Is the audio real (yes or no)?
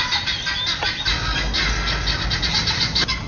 yes